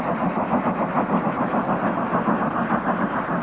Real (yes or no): yes